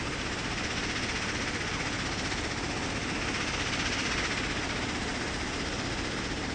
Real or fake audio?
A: real